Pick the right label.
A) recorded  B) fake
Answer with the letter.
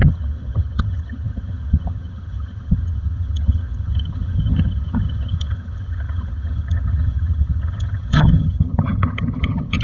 B